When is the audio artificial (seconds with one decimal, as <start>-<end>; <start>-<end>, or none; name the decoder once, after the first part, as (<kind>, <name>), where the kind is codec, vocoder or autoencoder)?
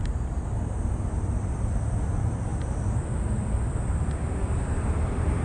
none